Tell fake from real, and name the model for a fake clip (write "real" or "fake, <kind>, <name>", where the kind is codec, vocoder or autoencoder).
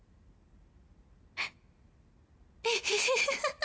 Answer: real